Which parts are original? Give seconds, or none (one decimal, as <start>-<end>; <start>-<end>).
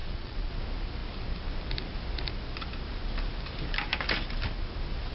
0.5-5.1